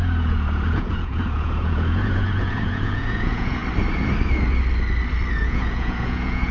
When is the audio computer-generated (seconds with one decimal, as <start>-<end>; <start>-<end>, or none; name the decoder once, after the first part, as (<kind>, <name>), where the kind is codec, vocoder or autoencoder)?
0.0-3.6 (vocoder, Vocos); 5.3-6.5